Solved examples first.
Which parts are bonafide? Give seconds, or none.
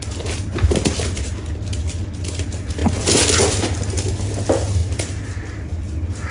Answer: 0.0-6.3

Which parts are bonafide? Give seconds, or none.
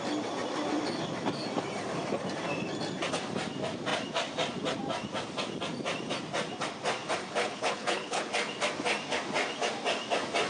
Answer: 0.0-7.2; 8.3-10.5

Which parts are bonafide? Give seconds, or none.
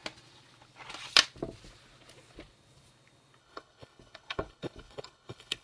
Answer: 0.0-3.4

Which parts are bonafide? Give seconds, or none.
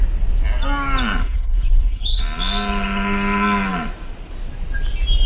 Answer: 0.0-1.2; 2.2-5.3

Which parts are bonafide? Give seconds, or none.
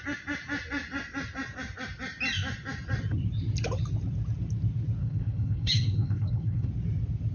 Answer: 0.0-5.0; 6.7-7.3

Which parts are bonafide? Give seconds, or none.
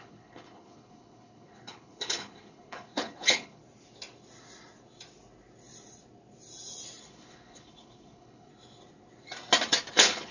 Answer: 3.6-7.0; 8.5-9.9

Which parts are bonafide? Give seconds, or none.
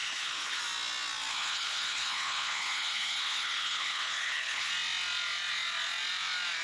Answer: 0.6-1.3; 4.7-6.6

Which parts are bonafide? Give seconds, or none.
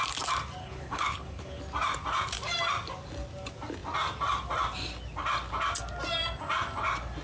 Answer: 0.0-0.6; 1.6-7.2